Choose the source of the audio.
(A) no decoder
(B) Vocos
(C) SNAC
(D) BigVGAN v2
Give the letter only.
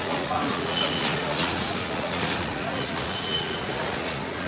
B